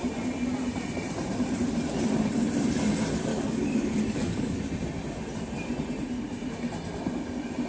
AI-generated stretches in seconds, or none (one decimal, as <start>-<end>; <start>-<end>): 3.3-4.6